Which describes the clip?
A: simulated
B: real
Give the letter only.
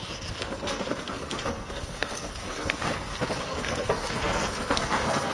A